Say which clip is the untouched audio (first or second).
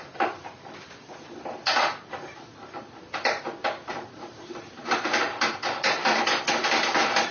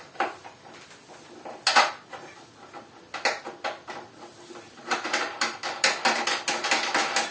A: second